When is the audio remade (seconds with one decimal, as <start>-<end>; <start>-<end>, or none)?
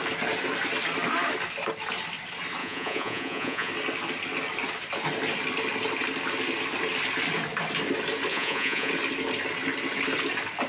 2.6-3.7; 8.3-8.9